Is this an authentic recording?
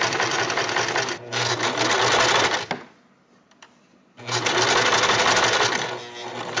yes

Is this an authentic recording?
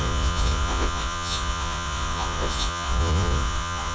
no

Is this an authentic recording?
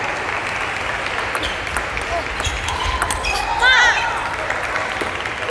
yes